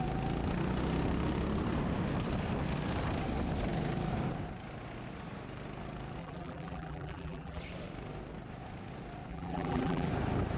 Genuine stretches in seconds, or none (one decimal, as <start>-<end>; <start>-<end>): 0.0-6.2; 7.6-9.3; 10.1-10.6